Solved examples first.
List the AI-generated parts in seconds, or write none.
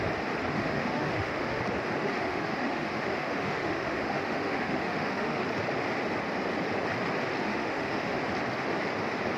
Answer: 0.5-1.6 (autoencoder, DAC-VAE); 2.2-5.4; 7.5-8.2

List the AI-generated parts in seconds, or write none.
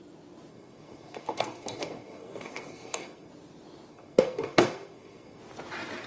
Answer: 0.5-3.3 (codec, SNAC); 3.9-5.4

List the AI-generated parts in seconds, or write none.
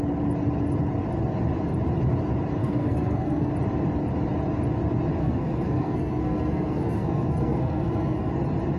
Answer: 2.6-3.5 (codec, SNAC); 5.2-8.3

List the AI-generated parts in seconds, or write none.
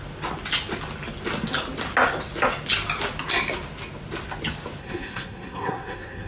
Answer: 4.8-6.3 (codec, SNAC)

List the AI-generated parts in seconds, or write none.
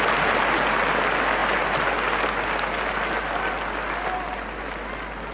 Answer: none